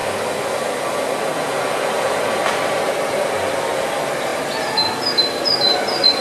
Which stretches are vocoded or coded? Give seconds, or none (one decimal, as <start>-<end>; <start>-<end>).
none